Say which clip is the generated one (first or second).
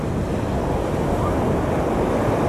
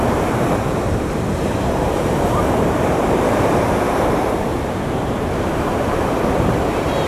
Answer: second